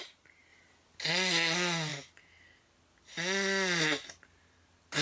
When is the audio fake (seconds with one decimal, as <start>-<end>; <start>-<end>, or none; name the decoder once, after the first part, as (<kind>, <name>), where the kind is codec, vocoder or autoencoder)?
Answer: none